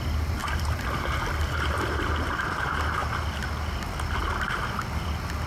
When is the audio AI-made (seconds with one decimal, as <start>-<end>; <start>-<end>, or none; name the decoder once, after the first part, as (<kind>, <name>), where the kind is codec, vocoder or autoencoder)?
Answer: none